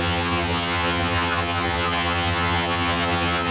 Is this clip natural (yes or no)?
no